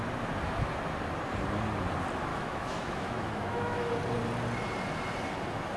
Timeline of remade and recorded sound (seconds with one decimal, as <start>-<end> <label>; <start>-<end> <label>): 0.0-2.3 recorded; 2.3-3.9 remade; 3.9-5.8 recorded